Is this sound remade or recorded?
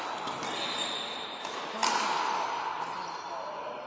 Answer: recorded